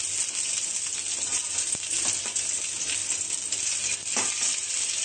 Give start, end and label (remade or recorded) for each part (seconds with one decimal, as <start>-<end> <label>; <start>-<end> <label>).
0.0-5.0 recorded